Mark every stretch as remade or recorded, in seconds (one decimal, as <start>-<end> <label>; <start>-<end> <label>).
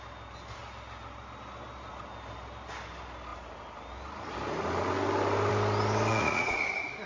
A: 0.0-6.1 recorded; 6.1-6.6 remade; 6.6-7.1 recorded